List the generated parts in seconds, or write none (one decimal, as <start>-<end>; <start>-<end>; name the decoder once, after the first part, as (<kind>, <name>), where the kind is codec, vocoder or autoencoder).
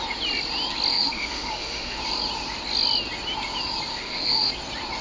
0.9-2.0 (autoencoder, DAC-VAE); 3.9-4.5